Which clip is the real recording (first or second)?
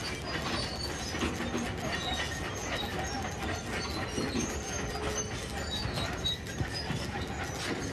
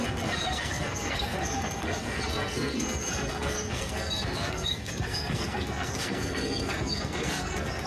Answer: first